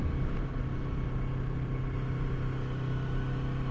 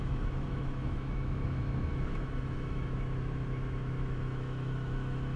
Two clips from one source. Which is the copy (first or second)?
second